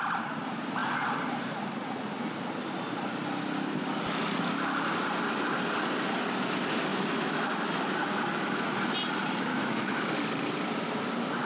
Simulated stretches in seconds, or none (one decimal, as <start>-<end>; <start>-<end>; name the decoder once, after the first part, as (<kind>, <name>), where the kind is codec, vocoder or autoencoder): 6.9-7.8 (autoencoder, DAC-VAE); 9.5-10.1